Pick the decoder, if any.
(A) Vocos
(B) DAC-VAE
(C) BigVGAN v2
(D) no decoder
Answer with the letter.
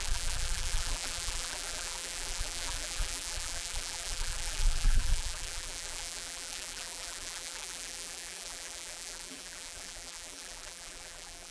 C